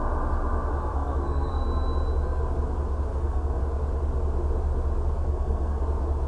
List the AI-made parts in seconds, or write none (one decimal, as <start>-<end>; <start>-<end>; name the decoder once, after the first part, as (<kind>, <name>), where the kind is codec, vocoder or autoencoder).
0.9-1.5 (codec, SNAC); 3.1-3.6; 5.2-5.8